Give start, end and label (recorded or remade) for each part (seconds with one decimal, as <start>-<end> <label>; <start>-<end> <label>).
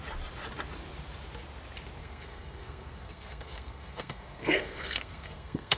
0.0-2.0 recorded; 2.0-5.8 remade